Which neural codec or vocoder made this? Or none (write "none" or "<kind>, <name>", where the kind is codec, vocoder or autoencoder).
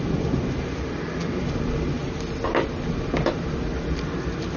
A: vocoder, BigVGAN v2